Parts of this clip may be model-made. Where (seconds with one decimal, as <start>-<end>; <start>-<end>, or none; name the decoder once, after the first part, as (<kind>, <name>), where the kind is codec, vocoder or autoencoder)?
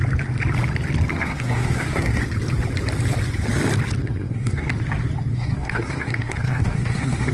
1.1-2.2 (codec, SNAC); 4.0-4.7; 5.3-7.3